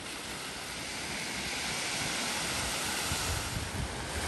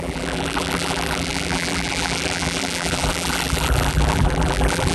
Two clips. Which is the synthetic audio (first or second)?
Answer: second